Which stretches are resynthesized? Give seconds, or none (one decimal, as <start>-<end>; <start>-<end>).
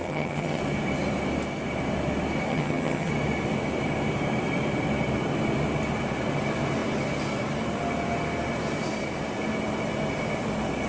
0.0-0.6; 2.5-3.1